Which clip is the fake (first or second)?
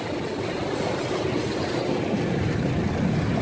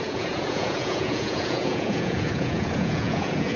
second